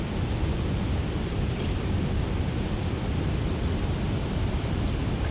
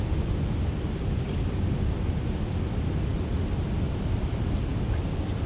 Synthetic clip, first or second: first